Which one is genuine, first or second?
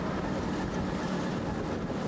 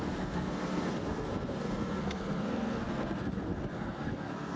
first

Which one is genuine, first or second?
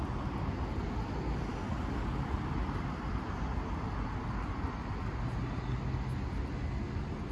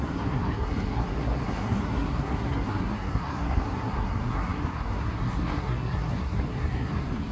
first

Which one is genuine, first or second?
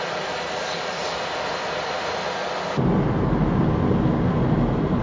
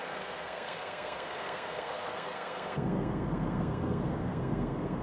first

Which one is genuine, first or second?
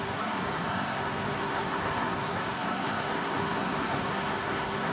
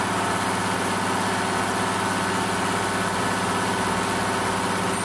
second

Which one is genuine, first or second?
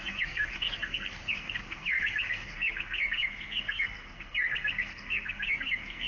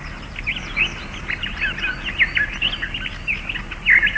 second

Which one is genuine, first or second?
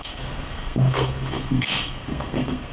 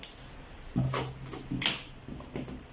second